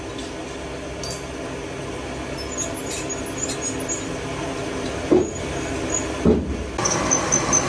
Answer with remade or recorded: recorded